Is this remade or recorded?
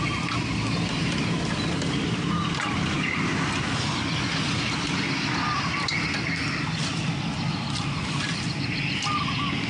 recorded